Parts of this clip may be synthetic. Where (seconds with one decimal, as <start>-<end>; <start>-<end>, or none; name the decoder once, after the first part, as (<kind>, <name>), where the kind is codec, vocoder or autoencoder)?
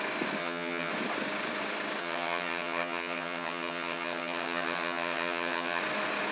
0.4-0.9 (vocoder, HiFi-GAN); 2.0-5.8